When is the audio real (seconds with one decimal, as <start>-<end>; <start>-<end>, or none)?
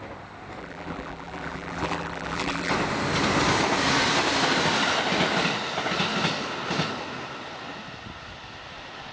0.0-0.6; 2.7-9.1